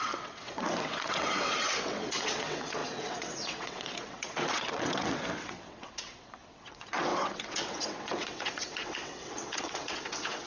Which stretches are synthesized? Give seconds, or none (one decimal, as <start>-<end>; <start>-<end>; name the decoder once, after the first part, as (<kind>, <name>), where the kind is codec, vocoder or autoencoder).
0.0-10.5 (vocoder, WaveNeXt)